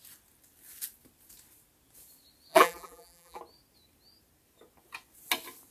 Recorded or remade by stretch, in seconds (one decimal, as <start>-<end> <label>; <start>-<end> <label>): 0.0-2.5 recorded; 2.5-3.4 remade; 3.4-5.7 recorded